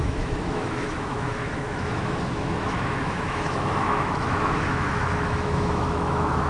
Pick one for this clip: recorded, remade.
remade